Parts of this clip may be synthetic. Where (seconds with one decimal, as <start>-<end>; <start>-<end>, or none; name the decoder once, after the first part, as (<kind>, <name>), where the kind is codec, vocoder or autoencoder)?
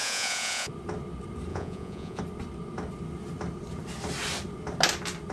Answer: 0.0-0.7 (vocoder, Vocos); 1.5-2.2